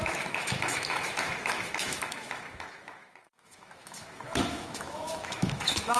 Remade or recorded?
remade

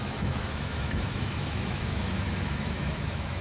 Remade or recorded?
remade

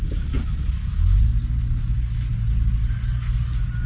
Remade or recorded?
recorded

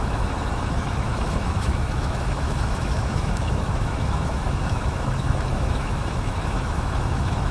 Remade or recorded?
remade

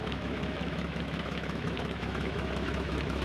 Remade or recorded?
remade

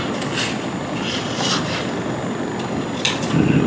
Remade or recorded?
recorded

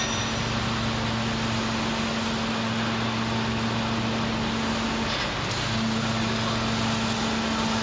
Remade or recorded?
recorded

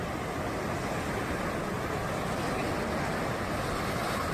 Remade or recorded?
recorded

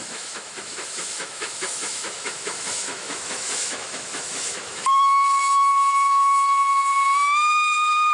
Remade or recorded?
remade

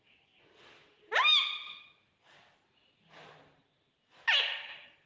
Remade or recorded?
recorded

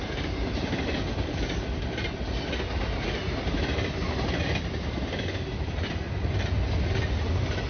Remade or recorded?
recorded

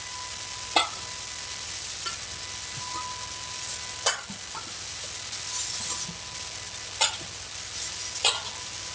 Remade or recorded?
recorded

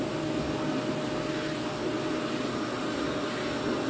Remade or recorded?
recorded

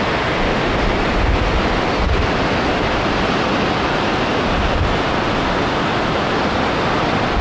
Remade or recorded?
recorded